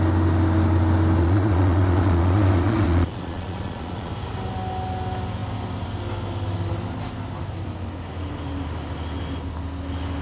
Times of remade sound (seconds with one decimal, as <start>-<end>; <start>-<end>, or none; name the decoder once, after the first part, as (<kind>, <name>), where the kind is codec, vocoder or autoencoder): 1.2-4.1 (vocoder, Vocos)